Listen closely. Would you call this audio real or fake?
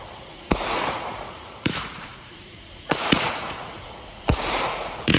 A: fake